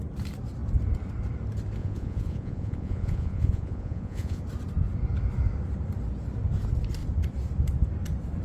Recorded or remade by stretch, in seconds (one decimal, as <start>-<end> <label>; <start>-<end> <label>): 0.0-1.8 recorded; 1.8-4.4 remade; 4.4-8.4 recorded